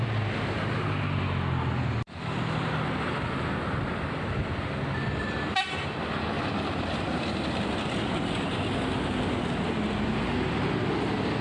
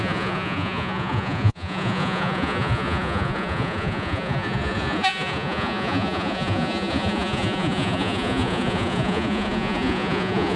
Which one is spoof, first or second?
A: second